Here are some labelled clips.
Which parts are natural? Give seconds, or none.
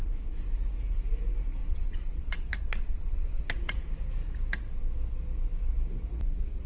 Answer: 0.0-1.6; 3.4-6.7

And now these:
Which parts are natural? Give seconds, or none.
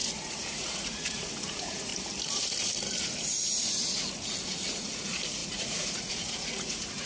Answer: 1.9-4.5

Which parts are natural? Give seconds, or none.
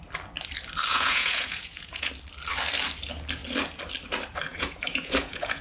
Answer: 0.0-0.9; 2.1-4.5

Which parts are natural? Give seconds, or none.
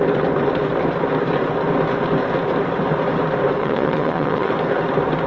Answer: 0.0-3.6; 4.5-5.3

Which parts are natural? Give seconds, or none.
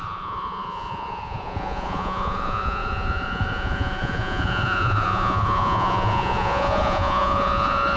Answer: none